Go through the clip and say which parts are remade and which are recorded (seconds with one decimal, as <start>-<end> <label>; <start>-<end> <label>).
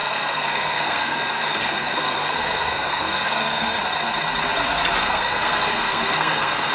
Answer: 0.0-3.8 remade; 3.8-5.0 recorded; 5.0-6.7 remade